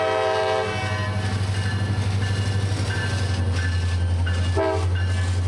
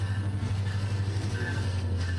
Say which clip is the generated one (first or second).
second